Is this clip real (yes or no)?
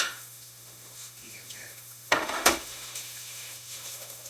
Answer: no